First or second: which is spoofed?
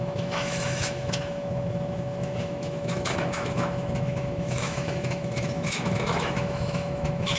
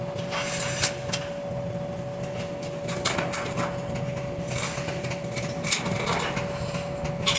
first